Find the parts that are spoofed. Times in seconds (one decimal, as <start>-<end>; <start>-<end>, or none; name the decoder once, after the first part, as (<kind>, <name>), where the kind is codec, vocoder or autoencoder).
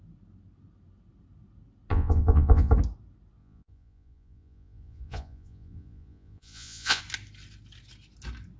1.9-2.7 (vocoder, Vocos); 3.4-7.0